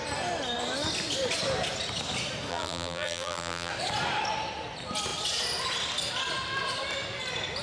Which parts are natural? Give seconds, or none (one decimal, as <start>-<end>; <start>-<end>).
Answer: 0.0-2.5; 3.7-7.6